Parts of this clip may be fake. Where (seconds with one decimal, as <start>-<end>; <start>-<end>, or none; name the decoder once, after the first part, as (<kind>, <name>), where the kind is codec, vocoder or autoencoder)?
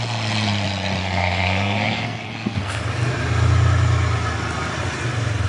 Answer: 1.0-2.8 (codec, SNAC)